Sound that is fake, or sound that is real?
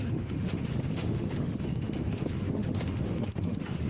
fake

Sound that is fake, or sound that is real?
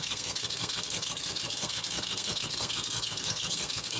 fake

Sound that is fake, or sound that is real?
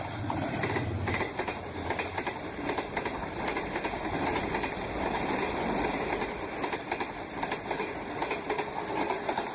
fake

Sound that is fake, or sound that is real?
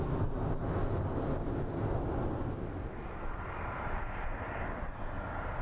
real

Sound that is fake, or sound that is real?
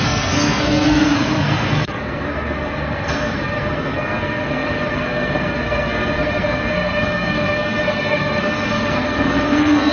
fake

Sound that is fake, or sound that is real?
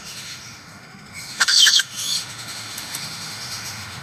fake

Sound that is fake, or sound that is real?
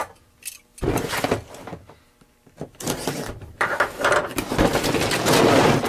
real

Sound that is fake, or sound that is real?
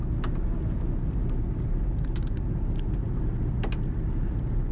real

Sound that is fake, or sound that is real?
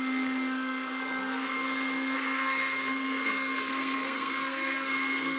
fake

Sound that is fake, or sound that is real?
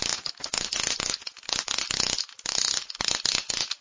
real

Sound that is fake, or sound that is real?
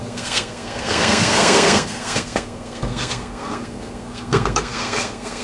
fake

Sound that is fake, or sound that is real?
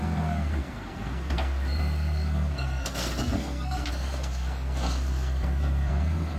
fake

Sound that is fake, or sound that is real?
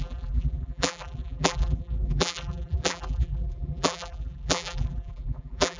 fake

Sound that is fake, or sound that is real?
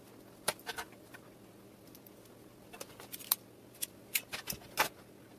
real